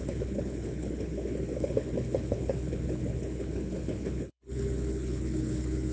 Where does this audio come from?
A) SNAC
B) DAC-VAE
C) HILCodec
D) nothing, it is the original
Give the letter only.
C